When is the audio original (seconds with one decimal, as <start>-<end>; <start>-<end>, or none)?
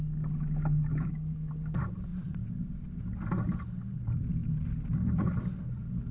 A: 0.0-0.9; 1.5-6.1